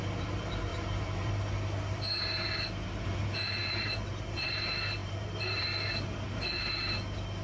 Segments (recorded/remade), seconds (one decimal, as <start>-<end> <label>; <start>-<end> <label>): 0.0-0.7 recorded; 0.7-1.3 remade; 1.3-3.6 recorded; 3.6-4.5 remade; 4.5-5.0 recorded; 5.0-5.6 remade; 5.6-7.4 recorded